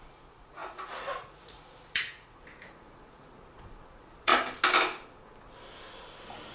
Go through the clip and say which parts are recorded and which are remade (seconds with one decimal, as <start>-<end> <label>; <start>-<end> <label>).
0.0-4.3 remade; 4.3-6.5 recorded